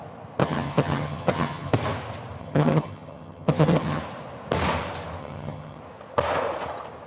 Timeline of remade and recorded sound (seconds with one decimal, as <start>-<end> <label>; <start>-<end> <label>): 0.0-0.4 recorded; 0.4-1.7 remade; 1.7-2.4 recorded; 2.4-4.0 remade; 4.0-5.2 recorded; 5.2-5.8 remade; 5.8-7.1 recorded